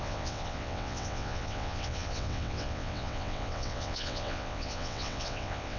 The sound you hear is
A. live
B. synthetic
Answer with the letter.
B